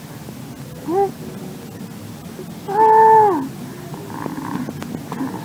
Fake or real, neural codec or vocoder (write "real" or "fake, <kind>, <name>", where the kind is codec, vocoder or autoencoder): real